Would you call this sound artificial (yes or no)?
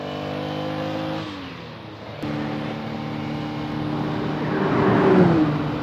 no